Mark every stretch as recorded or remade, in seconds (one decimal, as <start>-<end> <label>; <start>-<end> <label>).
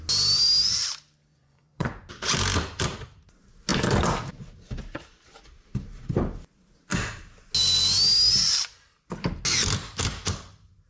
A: 0.0-1.3 recorded; 1.3-2.1 remade; 2.1-10.9 recorded